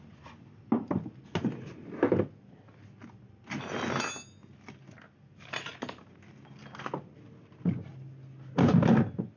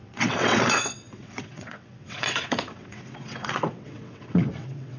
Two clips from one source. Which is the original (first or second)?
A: first